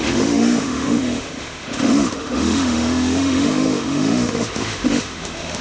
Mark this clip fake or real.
fake